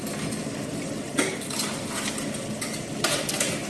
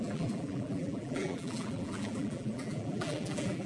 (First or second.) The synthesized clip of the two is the second